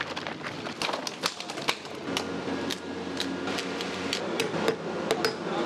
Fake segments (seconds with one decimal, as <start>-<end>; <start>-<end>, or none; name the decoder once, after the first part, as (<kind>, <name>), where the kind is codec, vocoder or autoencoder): none

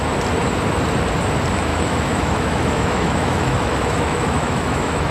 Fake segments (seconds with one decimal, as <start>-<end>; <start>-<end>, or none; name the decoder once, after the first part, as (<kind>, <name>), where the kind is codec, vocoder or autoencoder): 1.7-5.1 (autoencoder, DAC-VAE)

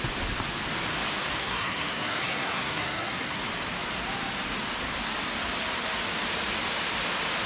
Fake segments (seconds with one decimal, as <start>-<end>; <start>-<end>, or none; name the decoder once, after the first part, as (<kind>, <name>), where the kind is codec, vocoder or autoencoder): 1.4-3.4 (codec, SNAC)